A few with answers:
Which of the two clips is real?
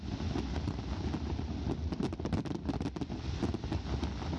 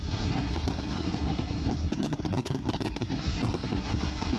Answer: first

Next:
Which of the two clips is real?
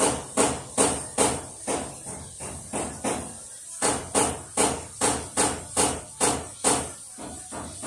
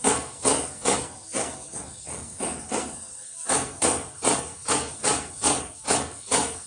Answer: first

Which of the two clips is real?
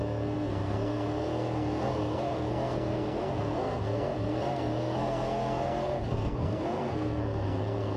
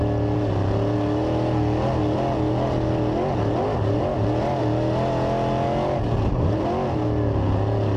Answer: second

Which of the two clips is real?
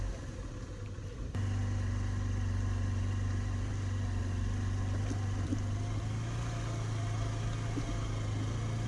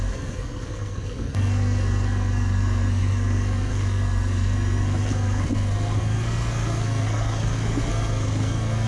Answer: first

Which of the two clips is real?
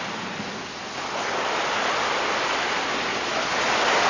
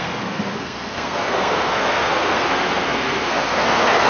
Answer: first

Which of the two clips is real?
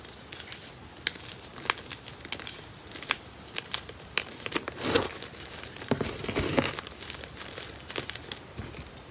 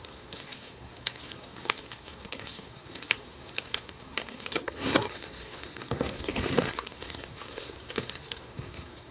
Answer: first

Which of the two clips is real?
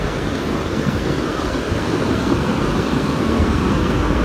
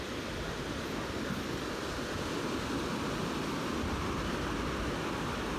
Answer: second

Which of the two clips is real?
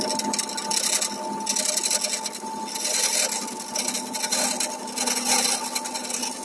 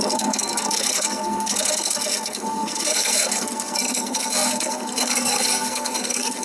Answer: first